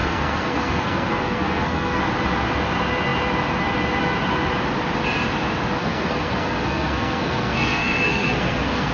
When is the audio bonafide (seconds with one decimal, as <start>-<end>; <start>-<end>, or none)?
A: 2.0-5.8